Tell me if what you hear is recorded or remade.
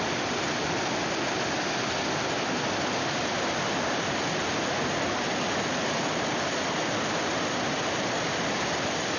recorded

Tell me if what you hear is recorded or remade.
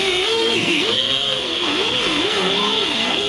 remade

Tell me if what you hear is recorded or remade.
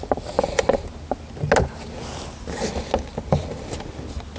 recorded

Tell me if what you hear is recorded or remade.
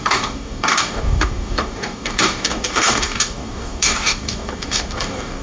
remade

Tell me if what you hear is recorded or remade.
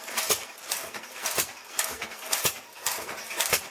remade